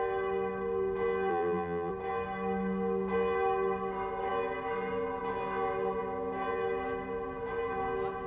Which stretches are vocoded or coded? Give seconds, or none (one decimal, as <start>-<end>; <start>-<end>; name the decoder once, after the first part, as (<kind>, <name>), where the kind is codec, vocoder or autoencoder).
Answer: 1.3-1.9 (vocoder, BigVGAN v2)